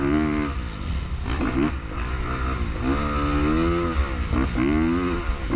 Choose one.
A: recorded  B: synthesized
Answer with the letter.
A